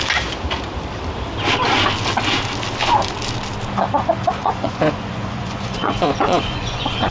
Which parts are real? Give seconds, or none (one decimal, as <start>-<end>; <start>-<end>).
0.0-4.4